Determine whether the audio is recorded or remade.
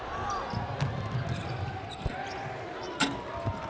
recorded